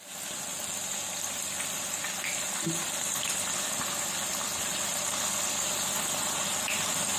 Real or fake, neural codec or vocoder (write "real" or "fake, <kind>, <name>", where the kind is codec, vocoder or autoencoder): real